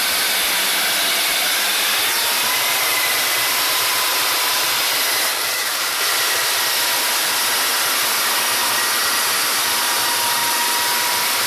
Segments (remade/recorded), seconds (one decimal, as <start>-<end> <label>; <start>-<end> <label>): 0.0-5.3 recorded; 5.3-6.0 remade; 6.0-11.5 recorded